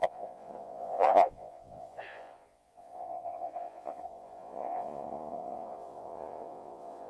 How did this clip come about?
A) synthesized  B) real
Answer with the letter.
A